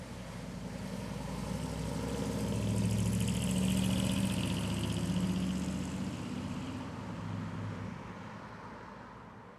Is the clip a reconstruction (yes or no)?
no